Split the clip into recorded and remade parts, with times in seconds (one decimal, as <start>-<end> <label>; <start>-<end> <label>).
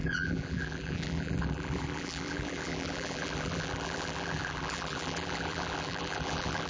0.0-6.7 remade